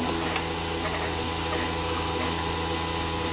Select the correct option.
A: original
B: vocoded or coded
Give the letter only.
A